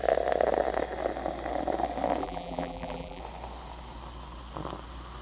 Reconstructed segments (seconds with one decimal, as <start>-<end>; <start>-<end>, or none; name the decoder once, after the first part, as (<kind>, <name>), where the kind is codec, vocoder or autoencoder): 2.2-3.2 (vocoder, BigVGAN v2)